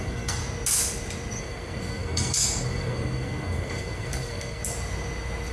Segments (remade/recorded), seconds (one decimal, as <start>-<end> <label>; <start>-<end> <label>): 0.0-0.4 remade; 0.4-1.4 recorded; 1.4-4.6 remade; 4.6-5.5 recorded